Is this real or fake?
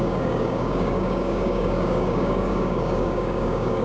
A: fake